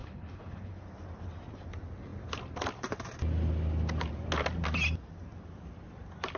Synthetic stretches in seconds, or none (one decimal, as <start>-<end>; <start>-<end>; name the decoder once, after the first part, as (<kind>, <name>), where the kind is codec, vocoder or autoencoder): 0.0-0.7 (codec, HILCodec)